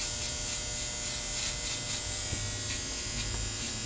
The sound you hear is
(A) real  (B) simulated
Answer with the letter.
A